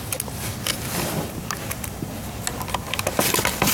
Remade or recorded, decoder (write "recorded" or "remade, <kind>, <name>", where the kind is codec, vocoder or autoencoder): recorded